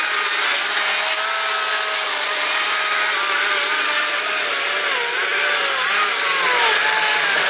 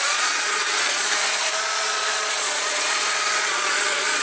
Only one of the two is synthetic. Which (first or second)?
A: second